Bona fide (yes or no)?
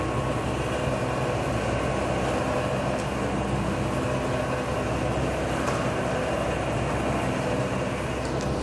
yes